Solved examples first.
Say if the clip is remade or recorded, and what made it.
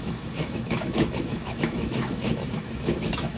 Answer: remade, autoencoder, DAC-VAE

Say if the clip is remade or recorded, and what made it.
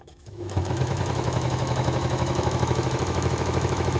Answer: remade, autoencoder, DAC-VAE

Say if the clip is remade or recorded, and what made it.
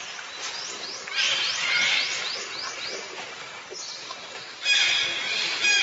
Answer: recorded